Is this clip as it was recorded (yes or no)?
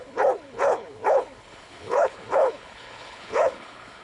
no